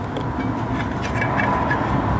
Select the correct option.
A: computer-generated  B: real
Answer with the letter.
B